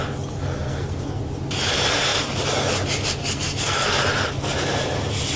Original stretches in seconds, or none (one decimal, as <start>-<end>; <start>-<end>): 0.0-0.4; 1.2-3.2; 4.0-5.4